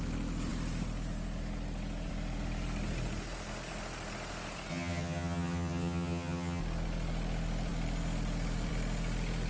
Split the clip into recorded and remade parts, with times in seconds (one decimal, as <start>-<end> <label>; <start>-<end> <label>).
0.0-4.7 recorded; 4.7-6.6 remade; 6.6-9.5 recorded